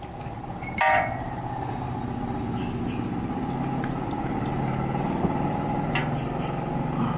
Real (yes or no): yes